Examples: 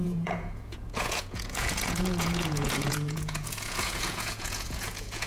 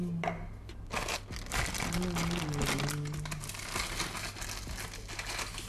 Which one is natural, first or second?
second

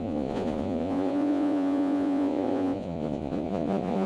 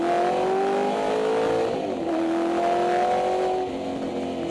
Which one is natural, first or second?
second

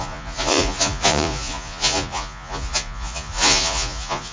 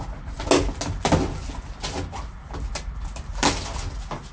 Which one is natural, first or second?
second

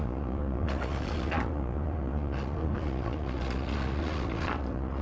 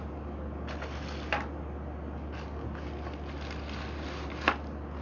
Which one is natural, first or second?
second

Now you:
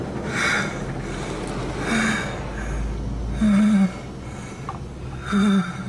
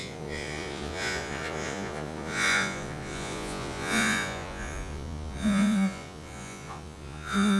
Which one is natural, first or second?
first